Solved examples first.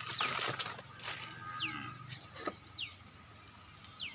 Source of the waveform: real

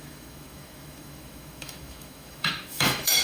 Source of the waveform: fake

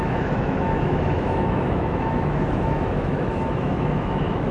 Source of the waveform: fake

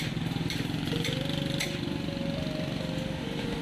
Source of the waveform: real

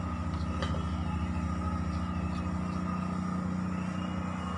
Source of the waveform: real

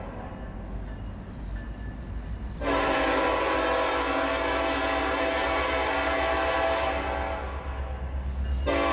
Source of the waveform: real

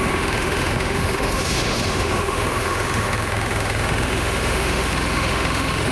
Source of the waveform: fake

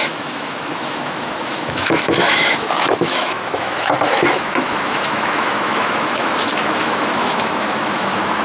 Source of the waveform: fake